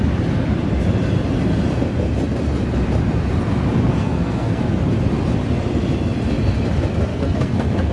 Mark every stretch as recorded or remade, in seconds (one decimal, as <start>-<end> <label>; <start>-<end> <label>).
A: 0.0-3.9 recorded; 3.9-4.6 remade; 4.6-7.1 recorded; 7.1-7.9 remade